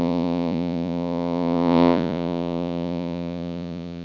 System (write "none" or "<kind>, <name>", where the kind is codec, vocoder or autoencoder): vocoder, Vocos